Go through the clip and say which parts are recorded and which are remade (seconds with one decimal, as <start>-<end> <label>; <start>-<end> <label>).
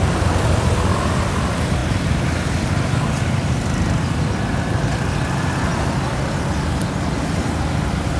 0.0-8.2 recorded